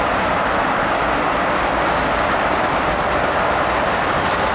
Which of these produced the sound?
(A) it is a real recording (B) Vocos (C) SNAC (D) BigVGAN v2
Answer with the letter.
A